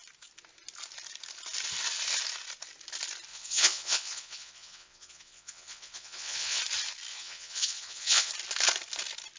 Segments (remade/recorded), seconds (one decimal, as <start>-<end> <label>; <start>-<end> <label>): 0.0-3.3 recorded; 3.3-6.6 remade; 6.6-7.1 recorded; 7.1-8.3 remade; 8.3-9.4 recorded